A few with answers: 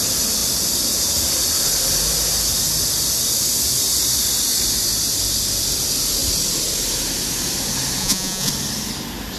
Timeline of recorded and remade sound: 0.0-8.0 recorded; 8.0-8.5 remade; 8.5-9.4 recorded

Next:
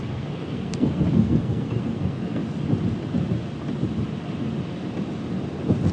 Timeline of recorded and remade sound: 0.0-2.4 remade; 2.4-5.9 recorded

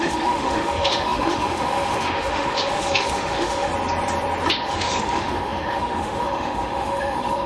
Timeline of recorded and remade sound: 0.0-3.7 remade; 3.7-4.5 recorded; 4.5-7.5 remade

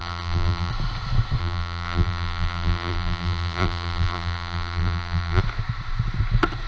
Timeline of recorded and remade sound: 0.0-0.7 remade; 0.7-1.4 recorded; 1.4-5.4 remade; 5.4-6.7 recorded